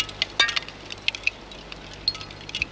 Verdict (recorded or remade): recorded